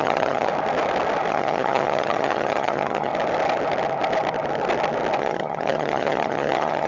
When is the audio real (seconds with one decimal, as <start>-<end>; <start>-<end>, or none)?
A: 0.5-1.3; 3.1-5.2